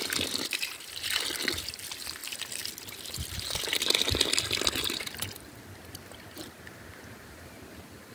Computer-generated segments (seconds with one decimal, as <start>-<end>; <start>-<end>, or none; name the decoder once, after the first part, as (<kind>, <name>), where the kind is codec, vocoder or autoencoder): 2.2-2.7 (vocoder, BigVGAN v2)

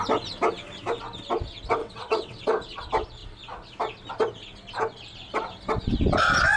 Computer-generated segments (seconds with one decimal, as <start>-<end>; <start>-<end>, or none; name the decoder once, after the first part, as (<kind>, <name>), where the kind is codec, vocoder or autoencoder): 1.8-2.4 (vocoder, WaveNeXt)

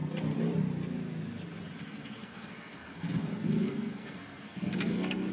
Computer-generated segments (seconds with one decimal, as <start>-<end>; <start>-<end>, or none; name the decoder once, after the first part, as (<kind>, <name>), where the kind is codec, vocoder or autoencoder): 1.8-5.3 (codec, SNAC)

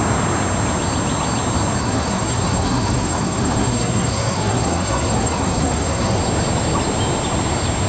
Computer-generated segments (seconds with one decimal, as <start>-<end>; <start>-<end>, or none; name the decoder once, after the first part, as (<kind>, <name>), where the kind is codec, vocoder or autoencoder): 1.8-6.2 (codec, SNAC)

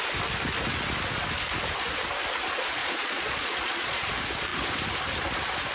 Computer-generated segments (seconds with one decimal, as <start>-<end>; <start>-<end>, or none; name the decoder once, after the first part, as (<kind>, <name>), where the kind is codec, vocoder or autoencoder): 2.8-4.1 (vocoder, Vocos)